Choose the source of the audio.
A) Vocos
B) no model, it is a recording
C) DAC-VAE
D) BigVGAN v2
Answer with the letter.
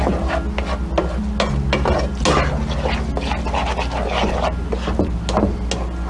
B